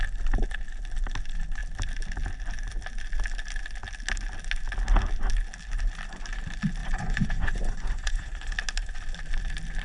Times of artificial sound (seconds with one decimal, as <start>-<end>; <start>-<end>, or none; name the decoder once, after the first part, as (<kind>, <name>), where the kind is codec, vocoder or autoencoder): 6.8-8.5 (vocoder, Vocos)